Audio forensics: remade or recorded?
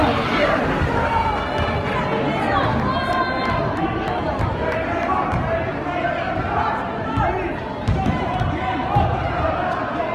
recorded